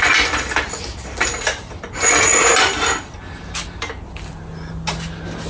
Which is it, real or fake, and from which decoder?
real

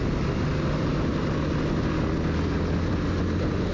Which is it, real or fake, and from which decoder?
real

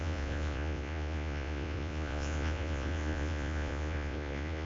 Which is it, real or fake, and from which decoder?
fake, vocoder, Vocos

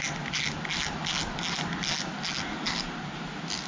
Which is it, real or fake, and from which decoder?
real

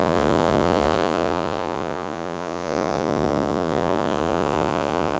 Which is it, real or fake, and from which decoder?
fake, vocoder, Vocos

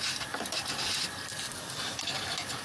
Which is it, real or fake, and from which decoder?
fake, vocoder, BigVGAN v2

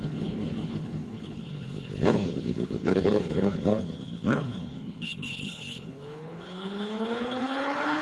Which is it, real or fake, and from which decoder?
fake, codec, HILCodec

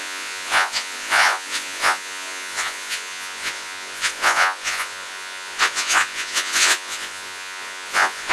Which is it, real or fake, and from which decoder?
fake, vocoder, Vocos